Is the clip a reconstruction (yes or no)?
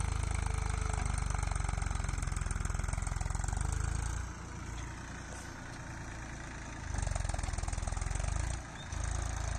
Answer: no